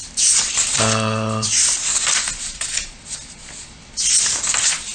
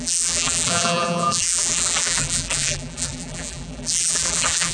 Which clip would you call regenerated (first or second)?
second